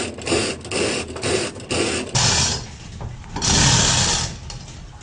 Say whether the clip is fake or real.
real